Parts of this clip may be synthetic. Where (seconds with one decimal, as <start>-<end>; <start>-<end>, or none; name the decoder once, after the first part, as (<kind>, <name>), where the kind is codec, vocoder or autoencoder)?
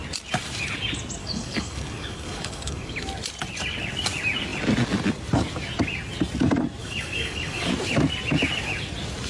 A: 1.2-2.9 (codec, DAC); 6.8-7.7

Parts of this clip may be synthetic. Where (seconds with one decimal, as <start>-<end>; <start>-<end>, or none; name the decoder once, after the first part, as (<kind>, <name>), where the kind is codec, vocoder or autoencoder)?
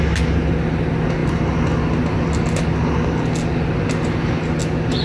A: none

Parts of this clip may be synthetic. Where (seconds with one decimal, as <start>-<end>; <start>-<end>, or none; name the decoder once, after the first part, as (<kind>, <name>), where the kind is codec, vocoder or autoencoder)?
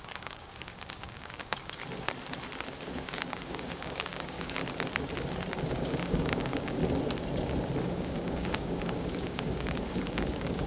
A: 0.0-1.8 (codec, DAC); 3.0-4.6; 5.7-6.8; 7.8-10.7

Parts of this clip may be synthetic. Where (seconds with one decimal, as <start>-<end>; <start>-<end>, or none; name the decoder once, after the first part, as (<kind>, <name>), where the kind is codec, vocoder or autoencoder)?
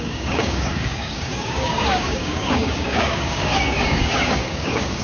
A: 0.0-5.0 (codec, DAC)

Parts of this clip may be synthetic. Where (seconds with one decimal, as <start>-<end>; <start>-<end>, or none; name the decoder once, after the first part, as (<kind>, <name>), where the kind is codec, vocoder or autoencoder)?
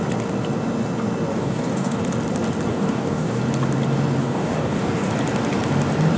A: 1.3-2.0 (codec, DAC); 2.7-3.4; 4.2-5.1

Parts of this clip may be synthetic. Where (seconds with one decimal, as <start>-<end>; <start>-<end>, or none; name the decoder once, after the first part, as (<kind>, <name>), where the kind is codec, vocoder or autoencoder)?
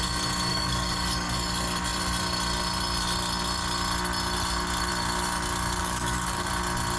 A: 0.5-1.5 (codec, DAC); 5.8-6.5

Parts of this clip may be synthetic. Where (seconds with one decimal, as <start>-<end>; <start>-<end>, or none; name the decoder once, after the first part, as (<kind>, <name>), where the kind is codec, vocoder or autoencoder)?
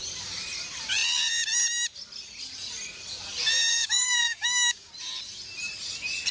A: 3.7-4.9 (codec, DAC)